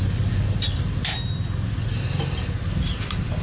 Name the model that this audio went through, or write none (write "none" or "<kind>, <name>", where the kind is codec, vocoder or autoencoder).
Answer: none